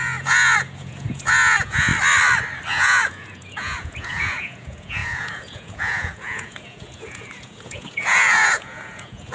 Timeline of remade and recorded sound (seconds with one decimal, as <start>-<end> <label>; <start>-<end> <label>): 0.0-1.9 remade; 1.9-2.7 recorded; 2.7-9.3 remade